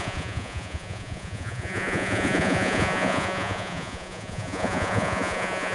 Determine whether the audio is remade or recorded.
remade